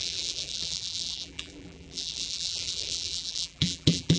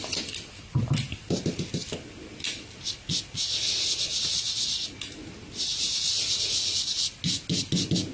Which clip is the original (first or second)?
second